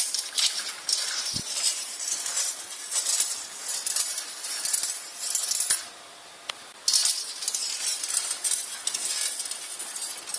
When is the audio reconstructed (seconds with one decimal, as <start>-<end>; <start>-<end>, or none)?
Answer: none